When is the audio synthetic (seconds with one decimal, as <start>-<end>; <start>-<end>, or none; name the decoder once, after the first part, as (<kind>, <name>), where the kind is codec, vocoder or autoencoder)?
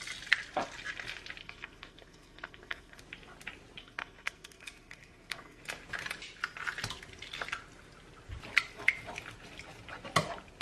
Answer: 1.4-3.0 (codec, SNAC); 3.8-5.6